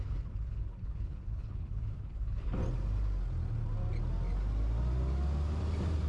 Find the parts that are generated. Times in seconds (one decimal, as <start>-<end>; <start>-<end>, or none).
0.0-2.6